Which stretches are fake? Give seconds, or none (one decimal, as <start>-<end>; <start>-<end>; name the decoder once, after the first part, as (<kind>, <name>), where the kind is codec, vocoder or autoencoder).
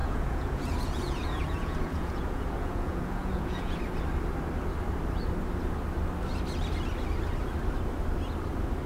0.0-3.8 (vocoder, Vocos)